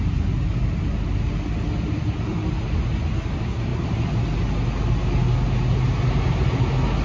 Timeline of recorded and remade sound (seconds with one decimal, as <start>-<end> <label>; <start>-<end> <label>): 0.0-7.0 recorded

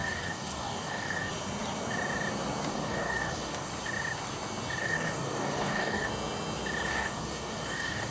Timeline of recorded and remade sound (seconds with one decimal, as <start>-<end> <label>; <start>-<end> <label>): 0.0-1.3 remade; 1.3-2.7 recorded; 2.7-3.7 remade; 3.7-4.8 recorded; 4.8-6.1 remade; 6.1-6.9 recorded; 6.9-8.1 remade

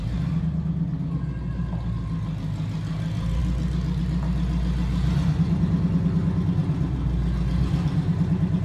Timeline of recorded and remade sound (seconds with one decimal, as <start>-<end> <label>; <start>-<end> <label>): 0.0-8.6 recorded

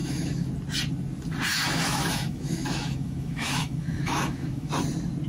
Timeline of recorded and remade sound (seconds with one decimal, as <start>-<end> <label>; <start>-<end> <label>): 0.0-0.5 remade; 0.5-1.5 recorded; 1.5-4.7 remade; 4.7-5.3 recorded

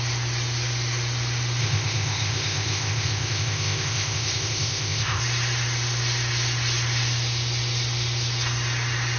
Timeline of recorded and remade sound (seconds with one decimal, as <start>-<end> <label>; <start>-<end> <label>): 0.0-1.6 recorded; 1.6-5.2 remade; 5.2-9.2 recorded

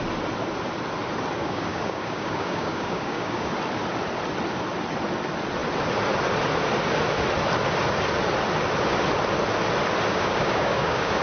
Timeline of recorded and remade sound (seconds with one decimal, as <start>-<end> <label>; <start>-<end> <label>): 0.0-1.4 recorded; 1.4-3.5 remade; 3.5-10.1 recorded; 10.1-11.2 remade

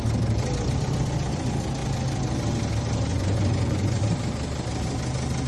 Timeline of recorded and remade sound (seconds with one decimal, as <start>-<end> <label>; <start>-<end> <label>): 0.0-3.1 recorded; 3.1-4.0 remade; 4.0-5.5 recorded